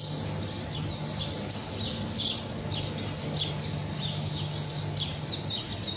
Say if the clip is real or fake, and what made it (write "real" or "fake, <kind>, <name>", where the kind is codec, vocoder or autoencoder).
real